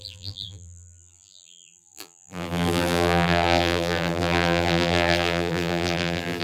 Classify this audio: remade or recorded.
remade